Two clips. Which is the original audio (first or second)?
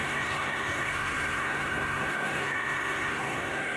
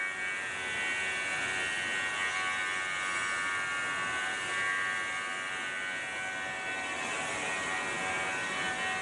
second